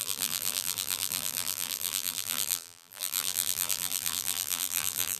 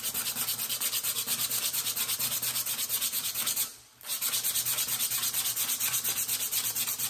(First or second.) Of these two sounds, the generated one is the first